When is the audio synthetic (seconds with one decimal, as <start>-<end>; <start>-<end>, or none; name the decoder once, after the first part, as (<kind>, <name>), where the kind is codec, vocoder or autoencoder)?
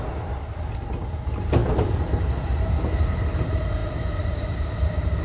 none